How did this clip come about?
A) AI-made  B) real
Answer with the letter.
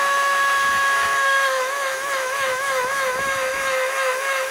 A